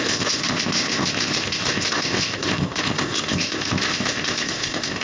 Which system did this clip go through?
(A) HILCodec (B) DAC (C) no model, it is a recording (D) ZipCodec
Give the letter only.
D